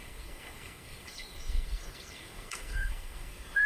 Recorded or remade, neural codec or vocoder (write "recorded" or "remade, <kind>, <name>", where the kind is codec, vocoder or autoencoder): remade, codec, SNAC